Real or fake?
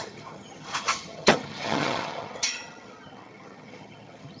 fake